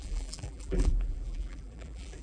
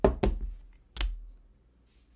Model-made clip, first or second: first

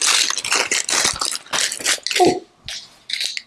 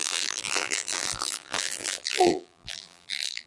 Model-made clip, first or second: second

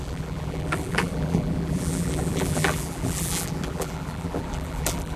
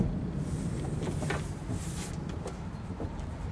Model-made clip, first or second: first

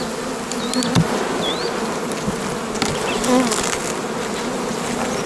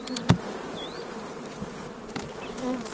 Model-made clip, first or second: second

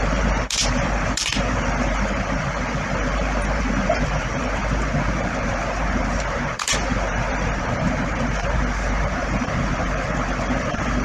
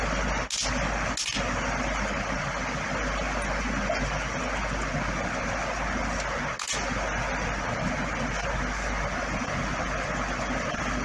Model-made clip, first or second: first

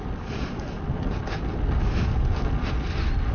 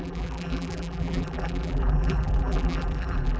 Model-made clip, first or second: second